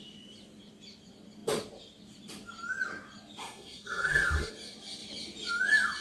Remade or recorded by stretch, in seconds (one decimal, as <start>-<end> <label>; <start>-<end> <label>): 0.0-3.4 recorded; 3.4-4.5 remade; 4.5-6.0 recorded